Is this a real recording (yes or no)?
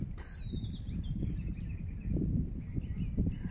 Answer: yes